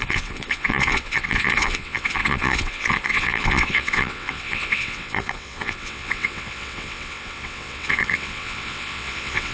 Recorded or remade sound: remade